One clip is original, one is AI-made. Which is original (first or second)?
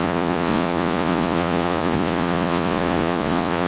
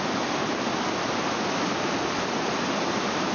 second